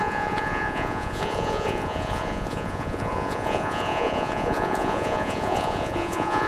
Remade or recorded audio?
remade